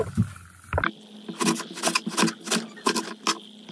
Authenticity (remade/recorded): recorded